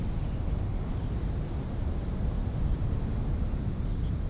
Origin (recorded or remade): recorded